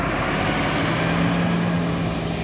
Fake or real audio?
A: real